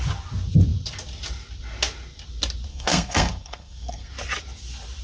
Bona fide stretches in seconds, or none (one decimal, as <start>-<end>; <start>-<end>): 0.0-2.7; 4.1-5.0